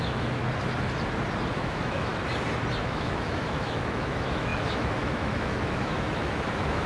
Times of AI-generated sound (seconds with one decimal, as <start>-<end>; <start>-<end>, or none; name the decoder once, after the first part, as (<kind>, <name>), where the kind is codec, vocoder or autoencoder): 0.0-0.4 (autoencoder, DAC-VAE); 1.5-2.1; 2.8-6.9